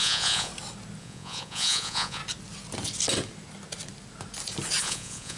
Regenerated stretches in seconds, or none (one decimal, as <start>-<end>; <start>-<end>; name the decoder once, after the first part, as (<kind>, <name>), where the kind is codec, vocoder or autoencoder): 0.0-0.5 (vocoder, Vocos); 1.0-2.2; 4.8-5.4